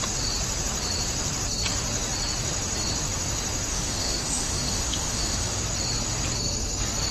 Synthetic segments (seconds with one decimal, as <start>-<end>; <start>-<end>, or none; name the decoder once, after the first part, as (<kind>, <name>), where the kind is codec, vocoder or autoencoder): 3.7-5.6 (autoencoder, DAC-VAE)